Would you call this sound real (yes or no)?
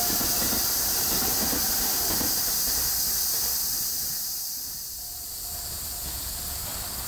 yes